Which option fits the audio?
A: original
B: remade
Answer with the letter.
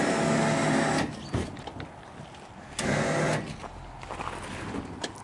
A